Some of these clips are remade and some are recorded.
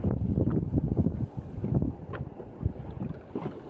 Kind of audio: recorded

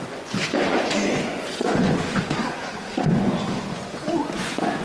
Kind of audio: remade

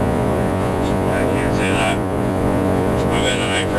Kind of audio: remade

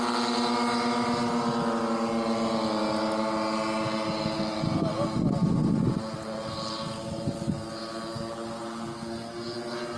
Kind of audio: recorded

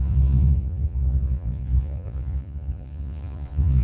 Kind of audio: remade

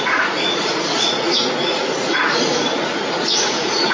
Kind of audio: remade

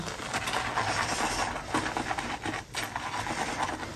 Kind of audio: recorded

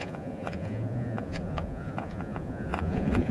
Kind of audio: remade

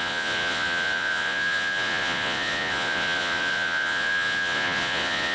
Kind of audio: remade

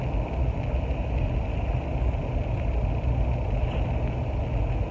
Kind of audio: recorded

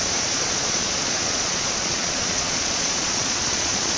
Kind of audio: remade